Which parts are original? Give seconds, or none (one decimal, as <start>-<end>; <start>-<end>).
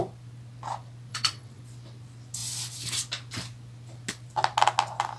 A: 0.0-1.1; 1.6-5.2